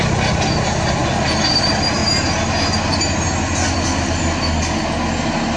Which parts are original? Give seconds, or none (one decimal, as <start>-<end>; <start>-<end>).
2.0-5.6